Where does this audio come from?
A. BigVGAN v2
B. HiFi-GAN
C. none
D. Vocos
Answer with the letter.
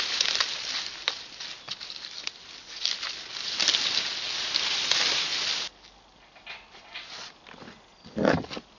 C